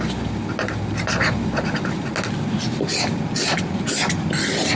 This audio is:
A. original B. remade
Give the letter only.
A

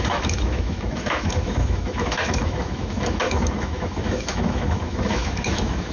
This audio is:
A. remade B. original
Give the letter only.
A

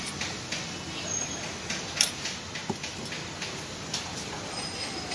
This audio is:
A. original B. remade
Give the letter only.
A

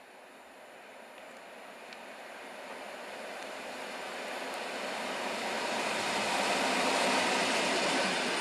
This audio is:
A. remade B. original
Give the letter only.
B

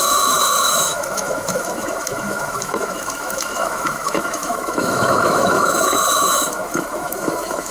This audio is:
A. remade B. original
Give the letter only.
A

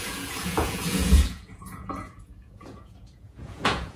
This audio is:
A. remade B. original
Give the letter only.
A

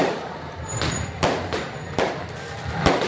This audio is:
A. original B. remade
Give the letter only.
B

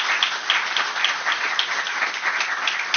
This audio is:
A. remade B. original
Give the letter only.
B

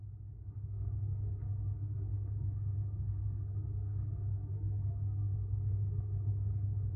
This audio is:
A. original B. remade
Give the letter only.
B